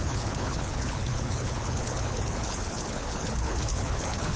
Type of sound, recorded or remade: remade